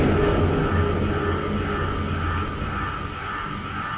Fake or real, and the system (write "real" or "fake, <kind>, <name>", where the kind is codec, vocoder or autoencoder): real